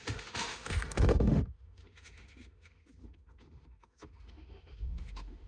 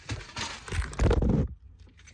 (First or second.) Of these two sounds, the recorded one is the second